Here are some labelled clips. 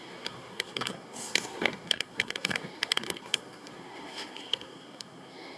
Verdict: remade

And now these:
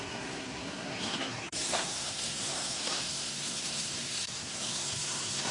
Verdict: remade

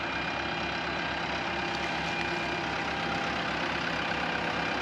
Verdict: recorded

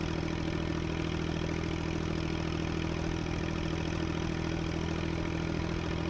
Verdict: recorded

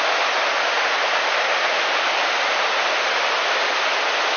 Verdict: recorded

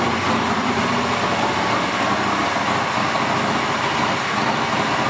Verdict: recorded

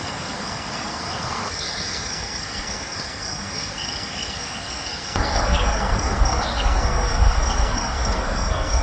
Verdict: remade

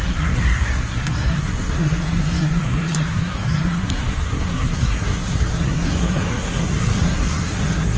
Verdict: remade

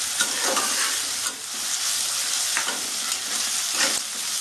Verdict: recorded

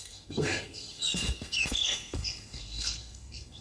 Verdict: remade